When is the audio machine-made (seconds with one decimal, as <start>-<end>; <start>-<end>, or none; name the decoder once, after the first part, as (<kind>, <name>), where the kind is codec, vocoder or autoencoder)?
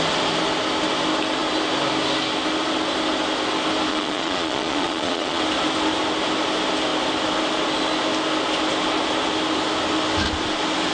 3.9-5.4 (vocoder, Vocos)